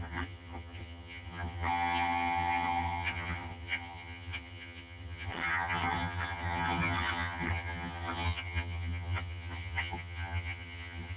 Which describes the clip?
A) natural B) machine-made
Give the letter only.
B